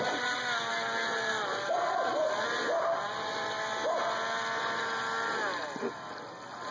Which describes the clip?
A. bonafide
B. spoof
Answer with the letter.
A